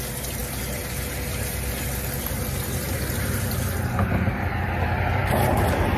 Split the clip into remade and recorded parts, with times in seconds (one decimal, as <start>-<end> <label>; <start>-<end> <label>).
0.0-6.0 recorded